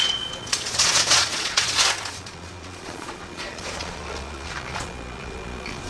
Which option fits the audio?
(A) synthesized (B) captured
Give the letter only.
A